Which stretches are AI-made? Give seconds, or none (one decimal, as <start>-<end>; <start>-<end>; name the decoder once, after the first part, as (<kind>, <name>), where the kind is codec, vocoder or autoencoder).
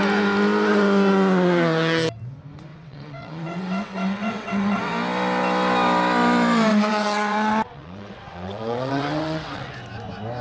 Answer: 2.7-4.9 (vocoder, WaveNeXt); 6.7-9.7